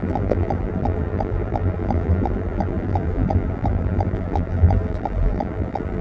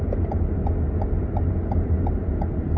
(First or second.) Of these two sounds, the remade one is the first